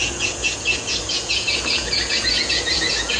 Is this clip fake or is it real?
fake